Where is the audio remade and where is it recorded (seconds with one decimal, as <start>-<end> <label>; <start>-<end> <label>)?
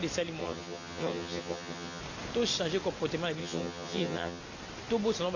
0.0-0.4 recorded; 0.4-2.0 remade; 2.0-3.4 recorded; 3.4-4.4 remade; 4.4-5.4 recorded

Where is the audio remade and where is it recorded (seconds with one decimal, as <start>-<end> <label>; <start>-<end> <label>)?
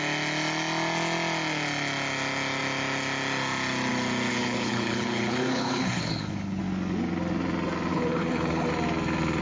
0.0-4.3 recorded; 4.3-6.6 remade; 6.6-7.9 recorded; 7.9-8.7 remade; 8.7-9.4 recorded